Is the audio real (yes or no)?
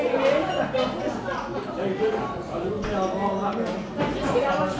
yes